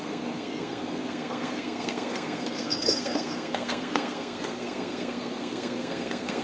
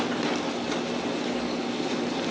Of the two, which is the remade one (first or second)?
first